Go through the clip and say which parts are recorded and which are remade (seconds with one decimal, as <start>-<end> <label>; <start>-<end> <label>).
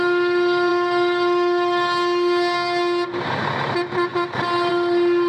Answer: 0.0-4.1 recorded; 4.1-4.7 remade; 4.7-5.3 recorded